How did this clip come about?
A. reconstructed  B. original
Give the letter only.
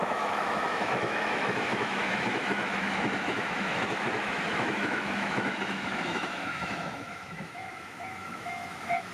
A